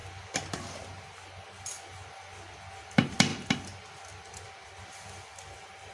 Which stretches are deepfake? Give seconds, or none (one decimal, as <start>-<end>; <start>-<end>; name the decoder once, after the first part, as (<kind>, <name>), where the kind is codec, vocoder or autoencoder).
none